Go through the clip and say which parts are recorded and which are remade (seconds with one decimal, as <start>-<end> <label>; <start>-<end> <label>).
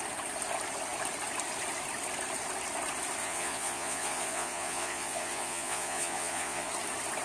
0.0-3.2 recorded; 3.2-6.7 remade; 6.7-7.2 recorded